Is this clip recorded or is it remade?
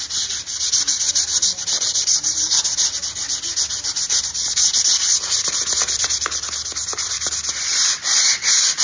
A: recorded